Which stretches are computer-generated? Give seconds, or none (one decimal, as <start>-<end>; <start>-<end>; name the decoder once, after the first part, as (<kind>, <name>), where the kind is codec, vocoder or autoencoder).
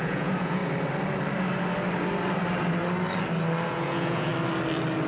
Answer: 0.0-0.6 (vocoder, Vocos); 3.7-4.3